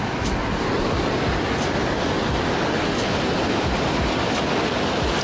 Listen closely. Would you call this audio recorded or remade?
recorded